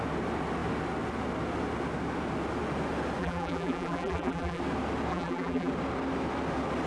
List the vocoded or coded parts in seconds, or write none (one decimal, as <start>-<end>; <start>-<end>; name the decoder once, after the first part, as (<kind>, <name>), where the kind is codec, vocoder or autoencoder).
3.2-4.6 (vocoder, BigVGAN v2); 5.1-5.7